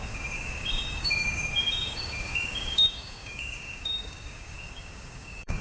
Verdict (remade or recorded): remade